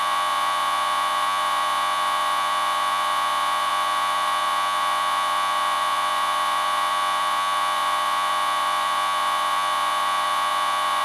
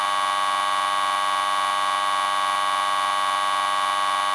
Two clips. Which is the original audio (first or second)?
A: second